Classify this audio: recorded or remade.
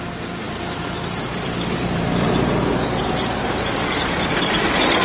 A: remade